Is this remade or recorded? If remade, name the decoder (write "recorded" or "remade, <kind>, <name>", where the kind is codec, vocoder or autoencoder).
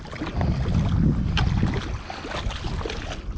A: recorded